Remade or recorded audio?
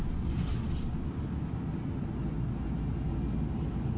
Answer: recorded